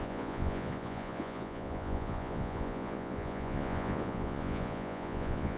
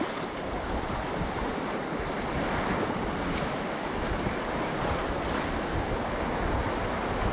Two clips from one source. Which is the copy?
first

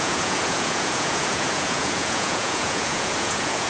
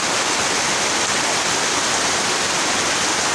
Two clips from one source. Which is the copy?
first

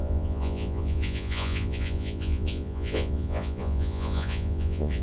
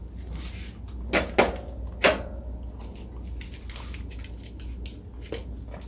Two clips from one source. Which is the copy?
first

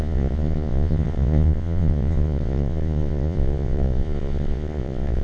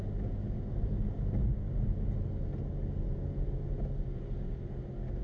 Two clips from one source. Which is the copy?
first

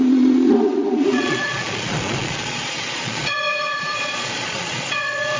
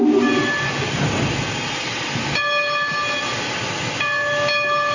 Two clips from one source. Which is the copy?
first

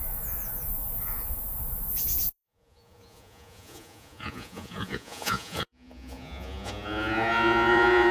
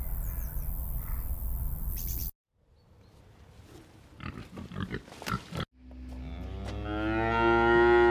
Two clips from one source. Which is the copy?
first